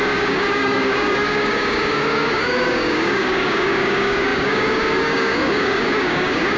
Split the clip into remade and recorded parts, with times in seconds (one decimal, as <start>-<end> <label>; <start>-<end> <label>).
0.0-6.6 remade